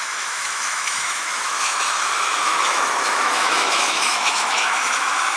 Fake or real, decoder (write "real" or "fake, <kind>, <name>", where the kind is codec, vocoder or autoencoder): fake, autoencoder, DAC-VAE